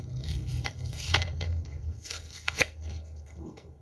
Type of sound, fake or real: fake